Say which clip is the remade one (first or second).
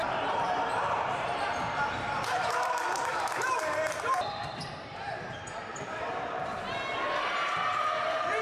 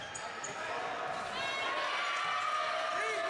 first